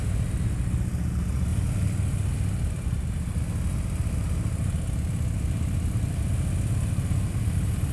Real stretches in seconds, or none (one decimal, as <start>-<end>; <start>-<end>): 0.0-7.9